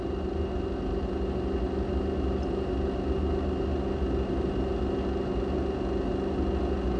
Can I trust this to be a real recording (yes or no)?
yes